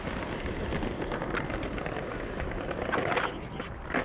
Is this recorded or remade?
recorded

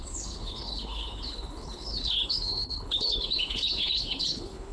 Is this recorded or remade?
remade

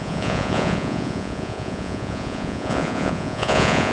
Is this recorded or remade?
remade